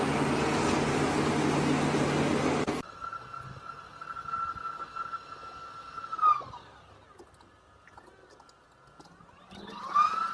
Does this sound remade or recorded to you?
recorded